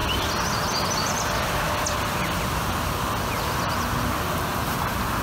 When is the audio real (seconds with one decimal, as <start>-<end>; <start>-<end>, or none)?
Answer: 0.0-5.2